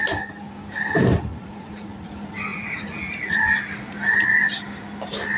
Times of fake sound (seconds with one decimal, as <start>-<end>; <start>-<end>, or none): 1.3-2.1; 2.5-3.4